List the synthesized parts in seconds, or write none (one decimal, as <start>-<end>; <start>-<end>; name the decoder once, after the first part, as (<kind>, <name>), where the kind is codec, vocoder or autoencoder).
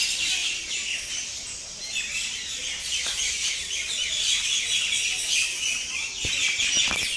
0.4-1.1 (vocoder, Vocos); 2.8-6.1